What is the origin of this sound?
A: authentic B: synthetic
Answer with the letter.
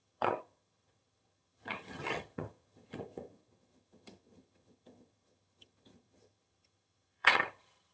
B